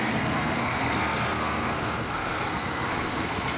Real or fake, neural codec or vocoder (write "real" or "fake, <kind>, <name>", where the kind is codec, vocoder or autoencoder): fake, codec, SNAC